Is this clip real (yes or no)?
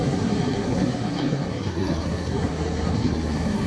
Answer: no